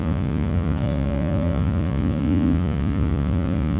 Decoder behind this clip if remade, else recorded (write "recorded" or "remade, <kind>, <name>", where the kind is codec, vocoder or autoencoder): remade, vocoder, Vocos